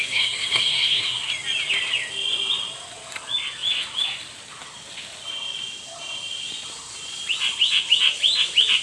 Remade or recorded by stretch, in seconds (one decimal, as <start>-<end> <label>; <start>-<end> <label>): 0.0-1.3 remade; 1.3-8.8 recorded